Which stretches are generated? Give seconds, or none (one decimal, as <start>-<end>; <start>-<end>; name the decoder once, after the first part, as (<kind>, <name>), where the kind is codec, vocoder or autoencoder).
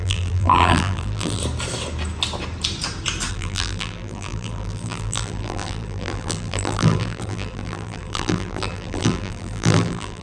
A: 0.0-1.4 (vocoder, BigVGAN v2); 3.3-10.2